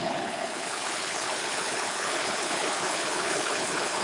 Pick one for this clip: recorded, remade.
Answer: remade